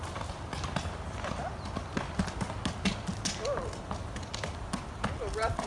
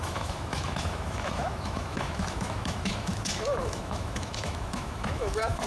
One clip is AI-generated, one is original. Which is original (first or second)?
first